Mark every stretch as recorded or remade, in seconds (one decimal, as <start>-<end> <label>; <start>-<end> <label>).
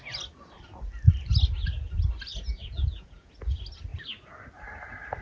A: 0.0-2.3 recorded; 2.3-3.3 remade; 3.3-5.2 recorded